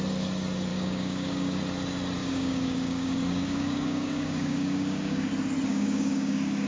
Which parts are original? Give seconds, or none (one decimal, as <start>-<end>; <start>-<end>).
0.0-0.7; 1.6-2.2; 5.3-5.7